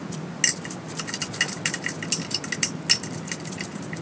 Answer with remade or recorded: recorded